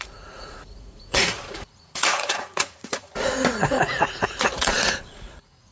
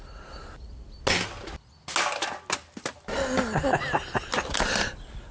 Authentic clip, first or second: second